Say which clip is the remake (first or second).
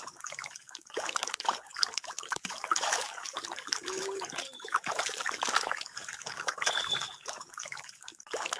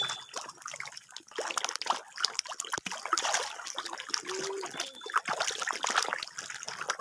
first